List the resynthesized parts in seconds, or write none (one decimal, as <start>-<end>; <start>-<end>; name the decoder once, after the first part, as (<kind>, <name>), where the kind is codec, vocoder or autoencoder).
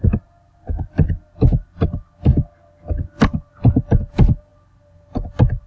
none